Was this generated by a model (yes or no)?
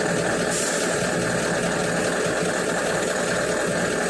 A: no